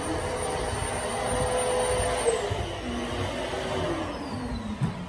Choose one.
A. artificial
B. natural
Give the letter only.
B